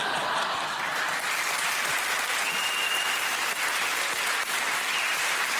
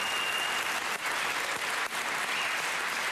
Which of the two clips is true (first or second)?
second